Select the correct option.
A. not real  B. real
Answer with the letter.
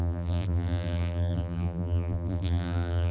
A